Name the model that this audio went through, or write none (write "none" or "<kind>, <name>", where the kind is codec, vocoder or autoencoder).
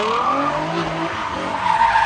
none